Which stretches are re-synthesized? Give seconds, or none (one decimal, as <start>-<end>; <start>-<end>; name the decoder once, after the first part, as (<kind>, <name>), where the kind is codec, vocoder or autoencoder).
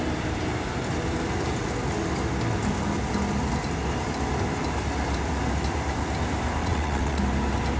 6.6-7.2 (vocoder, WaveNeXt)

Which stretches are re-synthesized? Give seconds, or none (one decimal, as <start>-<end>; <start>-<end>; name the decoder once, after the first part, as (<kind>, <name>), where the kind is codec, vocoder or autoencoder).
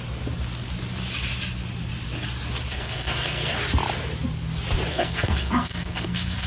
2.7-3.6 (codec, SNAC); 4.9-6.5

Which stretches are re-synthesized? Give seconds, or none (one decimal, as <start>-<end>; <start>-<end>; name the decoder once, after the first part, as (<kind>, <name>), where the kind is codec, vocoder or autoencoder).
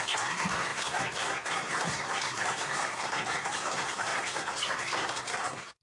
0.0-5.8 (codec, SNAC)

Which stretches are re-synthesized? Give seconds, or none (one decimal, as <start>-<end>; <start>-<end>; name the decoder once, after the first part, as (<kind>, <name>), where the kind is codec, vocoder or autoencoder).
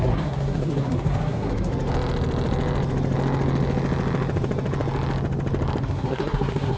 0.0-1.7 (codec, SNAC); 5.8-6.8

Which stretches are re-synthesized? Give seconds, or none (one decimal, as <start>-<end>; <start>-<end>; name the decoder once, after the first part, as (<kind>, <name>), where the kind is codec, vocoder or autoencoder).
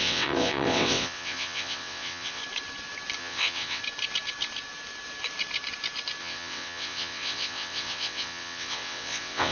0.0-2.4 (vocoder, WaveNeXt); 3.2-3.8; 6.2-9.5